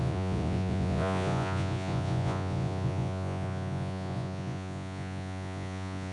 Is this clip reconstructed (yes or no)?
yes